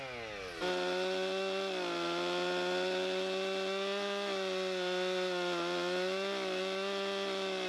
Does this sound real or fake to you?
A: real